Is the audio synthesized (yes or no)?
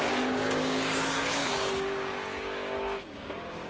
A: yes